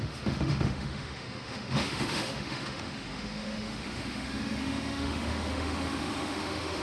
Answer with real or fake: fake